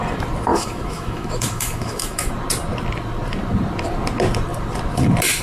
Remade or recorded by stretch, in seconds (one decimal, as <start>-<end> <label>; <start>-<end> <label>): 0.0-0.5 recorded; 0.5-2.3 remade; 2.3-5.4 recorded